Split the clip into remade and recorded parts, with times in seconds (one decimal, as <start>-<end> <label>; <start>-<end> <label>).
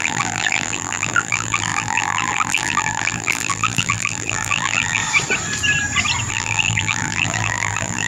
0.0-5.0 remade; 5.0-6.3 recorded; 6.3-8.1 remade